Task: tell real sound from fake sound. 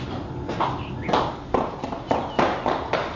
real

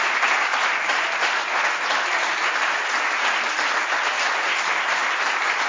real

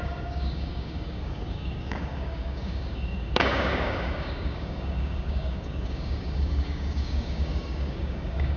fake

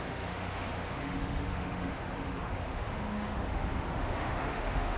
fake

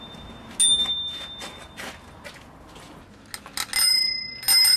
real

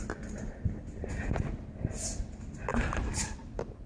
real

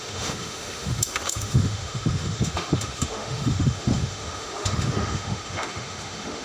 fake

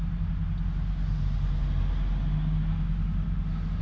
real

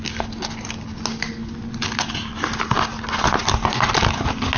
real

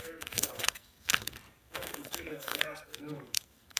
fake